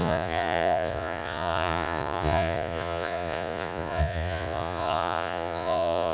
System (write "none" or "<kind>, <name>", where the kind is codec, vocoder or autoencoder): vocoder, Vocos